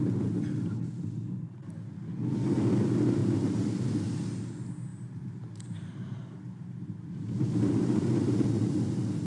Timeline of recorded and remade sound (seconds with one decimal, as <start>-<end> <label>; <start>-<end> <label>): 0.0-4.9 recorded; 4.9-8.5 remade; 8.5-9.3 recorded